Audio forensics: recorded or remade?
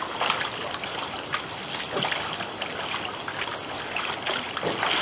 recorded